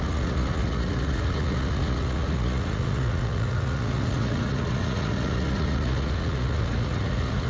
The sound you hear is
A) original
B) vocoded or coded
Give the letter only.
B